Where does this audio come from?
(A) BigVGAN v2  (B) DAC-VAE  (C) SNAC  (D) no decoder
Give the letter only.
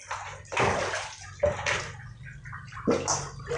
D